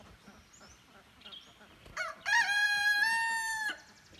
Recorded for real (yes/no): yes